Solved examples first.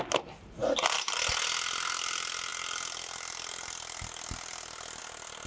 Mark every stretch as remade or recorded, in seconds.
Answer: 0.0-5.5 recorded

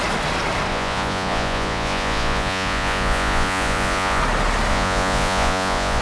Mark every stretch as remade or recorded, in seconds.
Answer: 0.0-0.7 recorded; 0.7-4.2 remade; 4.2-4.7 recorded; 4.7-6.0 remade

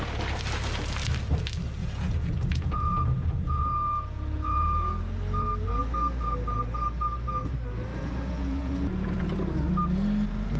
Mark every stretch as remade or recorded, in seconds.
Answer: 0.0-1.8 recorded; 1.8-5.0 remade; 5.0-7.9 recorded; 7.9-9.2 remade; 9.2-10.6 recorded

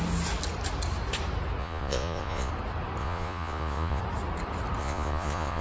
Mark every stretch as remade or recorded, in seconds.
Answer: 0.0-1.6 recorded; 1.6-2.5 remade; 2.5-3.0 recorded; 3.0-4.0 remade; 4.0-4.8 recorded; 4.8-5.6 remade

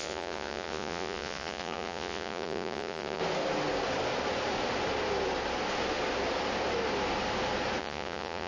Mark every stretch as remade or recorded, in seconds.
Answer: 0.0-3.2 remade; 3.2-7.8 recorded; 7.8-8.5 remade

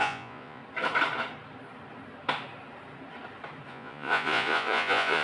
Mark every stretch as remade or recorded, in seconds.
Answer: 0.0-0.6 remade; 0.6-3.7 recorded; 3.7-5.2 remade

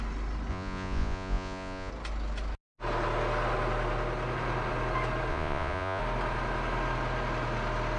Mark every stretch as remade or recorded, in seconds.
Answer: 0.0-0.5 recorded; 0.5-1.9 remade; 1.9-5.3 recorded; 5.3-6.0 remade; 6.0-8.0 recorded